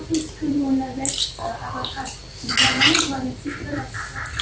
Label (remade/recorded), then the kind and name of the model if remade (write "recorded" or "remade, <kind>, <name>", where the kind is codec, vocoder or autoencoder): recorded